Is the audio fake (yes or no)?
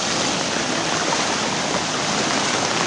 no